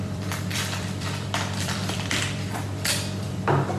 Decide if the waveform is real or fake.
fake